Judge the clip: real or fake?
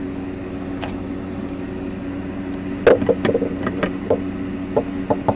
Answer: real